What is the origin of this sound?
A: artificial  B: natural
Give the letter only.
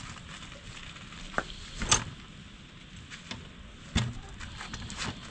B